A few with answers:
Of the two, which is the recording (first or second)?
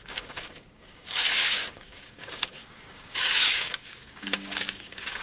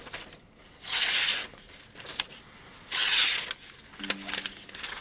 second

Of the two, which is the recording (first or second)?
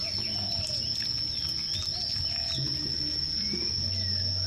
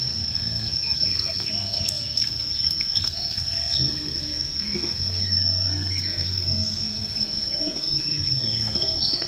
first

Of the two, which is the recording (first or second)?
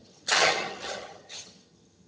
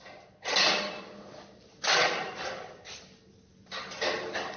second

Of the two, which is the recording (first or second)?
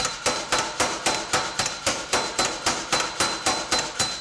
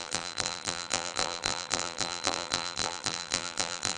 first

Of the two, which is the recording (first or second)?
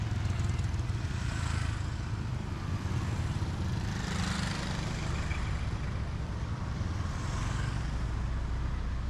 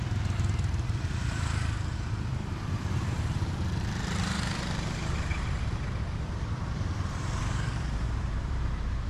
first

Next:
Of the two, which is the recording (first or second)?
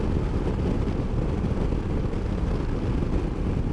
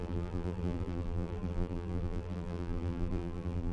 first